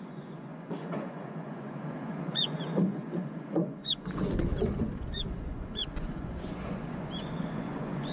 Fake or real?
fake